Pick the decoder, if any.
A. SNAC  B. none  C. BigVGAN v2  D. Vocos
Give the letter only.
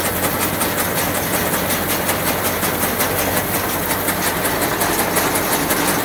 B